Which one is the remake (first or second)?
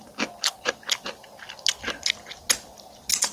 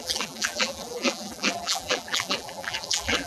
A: second